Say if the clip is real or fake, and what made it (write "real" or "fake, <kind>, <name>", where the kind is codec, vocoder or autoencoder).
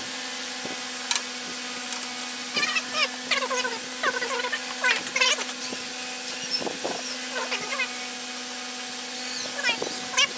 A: real